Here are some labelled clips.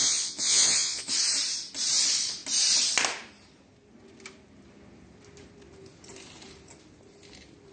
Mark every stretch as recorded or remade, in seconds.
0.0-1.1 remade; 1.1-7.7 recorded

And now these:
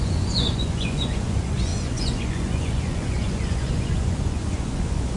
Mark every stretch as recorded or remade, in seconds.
0.0-5.2 remade

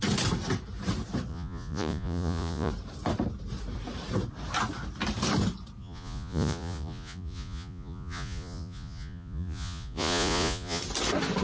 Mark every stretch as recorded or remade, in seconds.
0.0-1.3 recorded; 1.3-2.7 remade; 2.7-5.8 recorded; 5.8-10.8 remade; 10.8-11.4 recorded

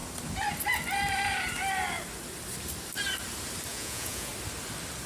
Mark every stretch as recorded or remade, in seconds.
0.0-3.7 recorded; 3.7-4.3 remade; 4.3-5.1 recorded